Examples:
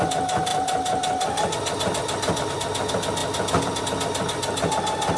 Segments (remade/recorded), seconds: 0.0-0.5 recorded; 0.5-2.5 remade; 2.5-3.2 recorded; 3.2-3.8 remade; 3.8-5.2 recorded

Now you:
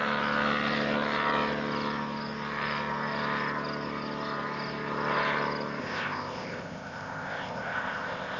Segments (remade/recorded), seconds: 0.0-5.8 recorded; 5.8-8.4 remade

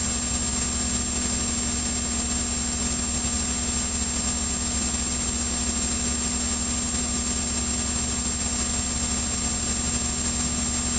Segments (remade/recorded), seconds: 0.0-11.0 recorded

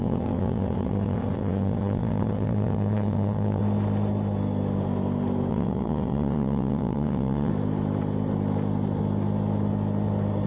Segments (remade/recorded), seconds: 0.0-3.6 remade; 3.6-5.5 recorded; 5.5-7.5 remade; 7.5-10.5 recorded

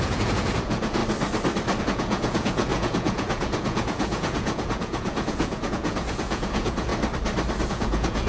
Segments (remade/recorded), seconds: 0.0-1.0 remade; 1.0-1.8 recorded; 1.8-6.9 remade; 6.9-7.7 recorded; 7.7-8.3 remade